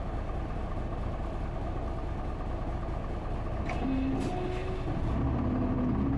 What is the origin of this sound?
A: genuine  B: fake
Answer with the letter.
A